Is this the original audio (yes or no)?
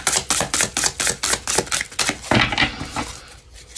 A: yes